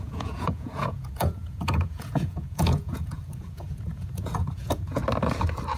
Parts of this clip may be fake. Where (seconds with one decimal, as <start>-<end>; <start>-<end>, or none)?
0.0-5.0